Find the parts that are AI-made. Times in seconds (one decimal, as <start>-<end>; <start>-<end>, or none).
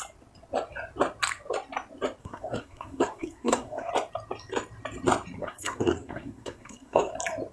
2.2-3.9; 5.4-7.1